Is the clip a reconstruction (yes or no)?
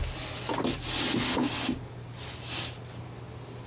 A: no